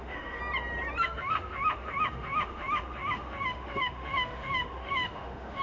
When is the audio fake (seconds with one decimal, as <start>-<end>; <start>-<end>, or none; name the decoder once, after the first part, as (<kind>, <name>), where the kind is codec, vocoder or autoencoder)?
0.0-0.4 (autoencoder, DAC-VAE); 1.0-5.6